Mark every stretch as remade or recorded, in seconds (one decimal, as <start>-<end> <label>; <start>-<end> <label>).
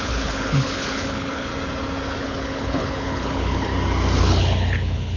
0.0-1.5 remade; 1.5-2.2 recorded; 2.2-3.7 remade; 3.7-4.2 recorded; 4.2-5.2 remade